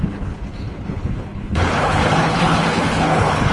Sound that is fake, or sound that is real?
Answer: fake